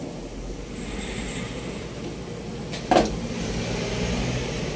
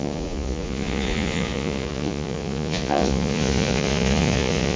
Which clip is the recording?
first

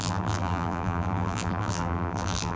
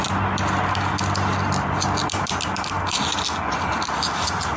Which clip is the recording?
second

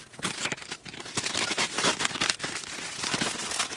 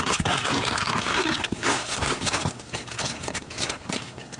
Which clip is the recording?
first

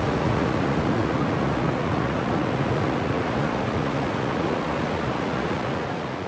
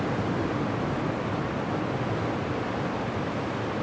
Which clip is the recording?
second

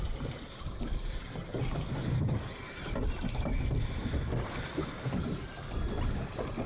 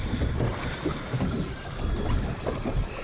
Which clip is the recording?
first